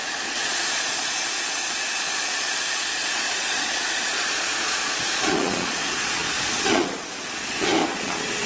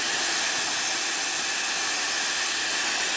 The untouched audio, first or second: second